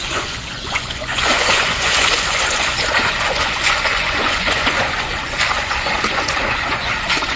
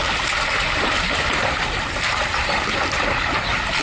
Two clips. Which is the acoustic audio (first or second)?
second